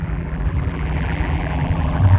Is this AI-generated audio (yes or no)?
yes